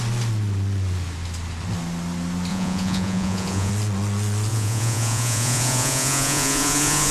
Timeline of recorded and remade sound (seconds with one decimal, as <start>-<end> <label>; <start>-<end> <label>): 0.0-2.5 recorded; 2.5-3.7 remade; 3.7-4.5 recorded; 4.5-7.1 remade